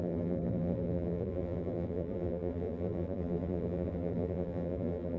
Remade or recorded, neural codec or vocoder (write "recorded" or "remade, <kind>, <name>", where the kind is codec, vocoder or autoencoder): remade, vocoder, BigVGAN v2